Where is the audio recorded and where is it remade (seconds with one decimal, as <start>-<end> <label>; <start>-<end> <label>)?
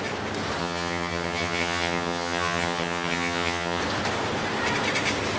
0.0-0.6 recorded; 0.6-3.8 remade; 3.8-5.4 recorded